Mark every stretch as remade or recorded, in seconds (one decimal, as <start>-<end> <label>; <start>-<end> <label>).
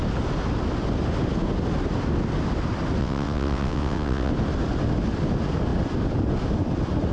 0.0-3.0 recorded; 3.0-4.3 remade; 4.3-7.1 recorded